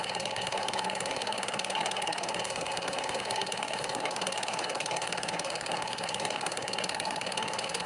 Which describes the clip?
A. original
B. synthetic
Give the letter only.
B